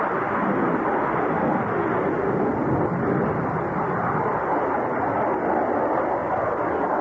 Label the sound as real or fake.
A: real